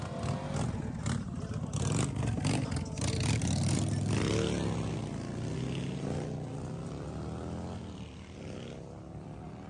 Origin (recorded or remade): recorded